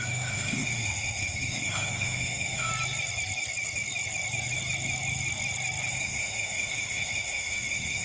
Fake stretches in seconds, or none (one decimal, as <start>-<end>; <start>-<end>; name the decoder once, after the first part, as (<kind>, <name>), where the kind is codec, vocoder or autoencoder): 0.0-2.7 (autoencoder, DAC-VAE); 5.9-8.0